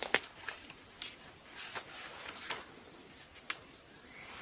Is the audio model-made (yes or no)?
no